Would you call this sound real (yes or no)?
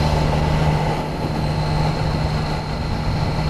yes